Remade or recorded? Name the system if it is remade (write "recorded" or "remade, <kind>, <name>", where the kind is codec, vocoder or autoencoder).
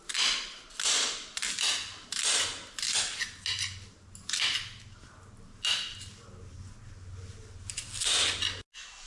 recorded